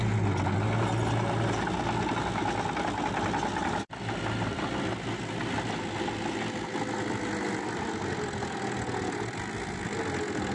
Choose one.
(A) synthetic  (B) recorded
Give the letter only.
B